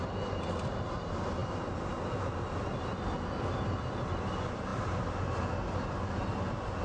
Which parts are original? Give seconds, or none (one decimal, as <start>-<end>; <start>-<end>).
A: 0.0-6.8